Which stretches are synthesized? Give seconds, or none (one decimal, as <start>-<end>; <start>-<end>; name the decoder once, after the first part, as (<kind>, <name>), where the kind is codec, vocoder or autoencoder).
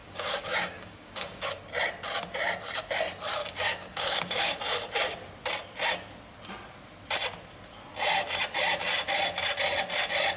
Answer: 0.0-1.5 (codec, DAC); 3.4-4.6